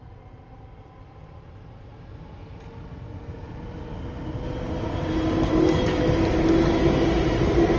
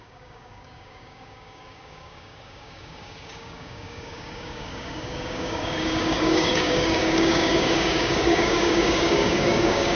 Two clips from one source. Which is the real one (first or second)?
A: first